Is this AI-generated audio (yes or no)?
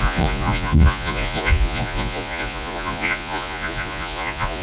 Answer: yes